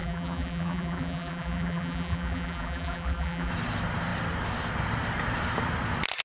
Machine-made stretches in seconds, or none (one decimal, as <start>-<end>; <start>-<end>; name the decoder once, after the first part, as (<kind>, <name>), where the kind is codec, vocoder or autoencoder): 0.0-3.5 (vocoder, BigVGAN v2)